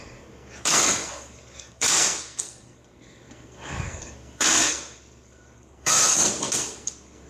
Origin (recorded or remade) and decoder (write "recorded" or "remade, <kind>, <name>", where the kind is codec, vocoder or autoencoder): remade, codec, SNAC